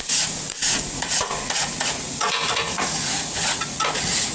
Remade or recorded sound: remade